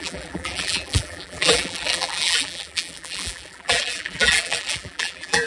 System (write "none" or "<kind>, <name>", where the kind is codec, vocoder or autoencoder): vocoder, BigVGAN v2